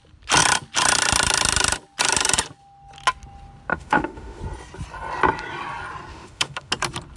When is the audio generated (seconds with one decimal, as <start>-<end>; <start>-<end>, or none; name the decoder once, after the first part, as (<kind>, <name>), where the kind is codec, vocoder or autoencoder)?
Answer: 3.7-4.4 (autoencoder, DAC-VAE); 6.1-6.7